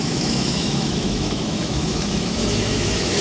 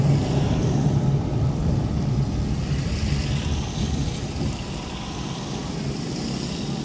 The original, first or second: second